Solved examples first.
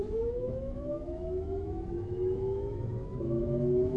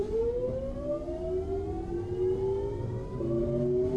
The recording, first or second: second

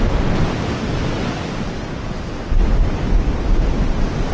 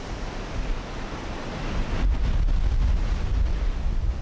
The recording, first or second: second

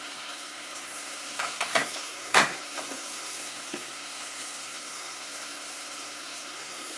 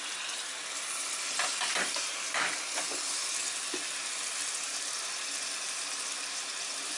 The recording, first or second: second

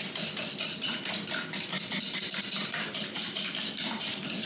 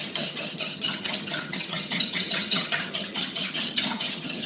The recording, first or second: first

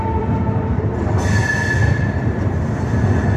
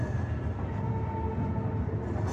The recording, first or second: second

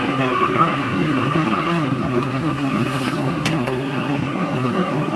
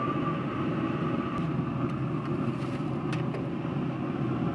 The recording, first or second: second